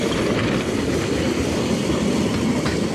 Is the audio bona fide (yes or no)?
yes